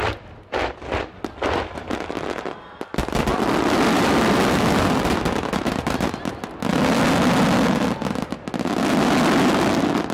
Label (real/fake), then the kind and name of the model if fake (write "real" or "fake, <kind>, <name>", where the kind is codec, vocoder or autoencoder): real